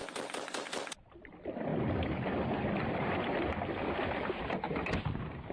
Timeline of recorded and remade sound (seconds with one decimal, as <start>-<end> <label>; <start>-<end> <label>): 0.0-5.5 recorded